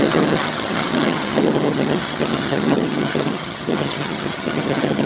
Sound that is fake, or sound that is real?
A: fake